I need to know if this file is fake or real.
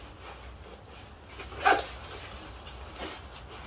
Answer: real